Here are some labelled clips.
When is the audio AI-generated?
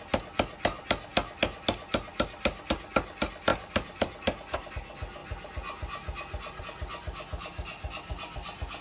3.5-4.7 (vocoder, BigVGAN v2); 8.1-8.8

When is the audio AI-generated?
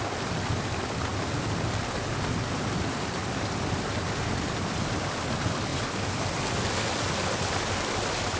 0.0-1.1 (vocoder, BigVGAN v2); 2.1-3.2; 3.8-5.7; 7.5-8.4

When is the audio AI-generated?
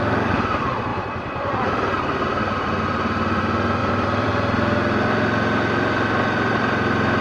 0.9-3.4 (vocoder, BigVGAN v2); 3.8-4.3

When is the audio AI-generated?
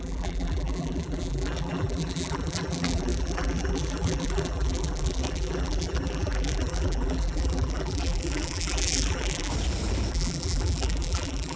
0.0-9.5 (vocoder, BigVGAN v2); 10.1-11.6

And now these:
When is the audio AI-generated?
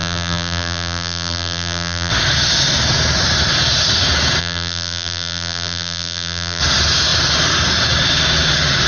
0.0-2.1 (vocoder, BigVGAN v2); 4.4-6.6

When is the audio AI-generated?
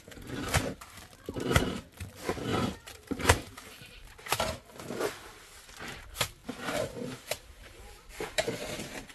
2.5-4.1 (vocoder, BigVGAN v2); 6.4-8.0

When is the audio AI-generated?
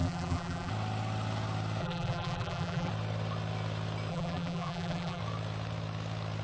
0.0-0.7 (vocoder, BigVGAN v2); 1.8-2.9; 4.1-5.2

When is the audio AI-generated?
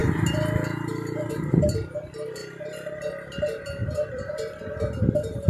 2.4-3.0 (vocoder, BigVGAN v2); 3.8-5.0